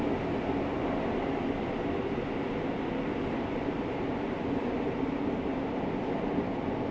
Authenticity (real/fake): real